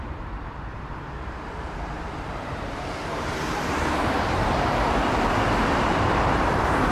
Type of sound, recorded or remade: remade